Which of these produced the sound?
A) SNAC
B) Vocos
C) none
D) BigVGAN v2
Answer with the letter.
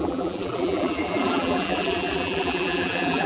D